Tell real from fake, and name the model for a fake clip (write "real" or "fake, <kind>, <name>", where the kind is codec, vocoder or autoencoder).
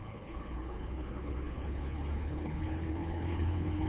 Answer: fake, codec, HILCodec